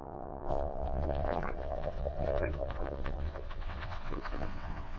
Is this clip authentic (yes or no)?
no